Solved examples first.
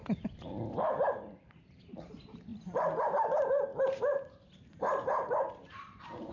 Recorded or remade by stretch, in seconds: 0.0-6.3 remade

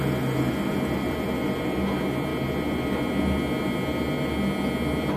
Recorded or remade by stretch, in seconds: 0.0-5.2 recorded

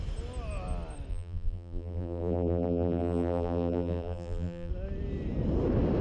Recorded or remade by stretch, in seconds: 0.0-1.1 recorded; 1.1-4.7 remade; 4.7-6.0 recorded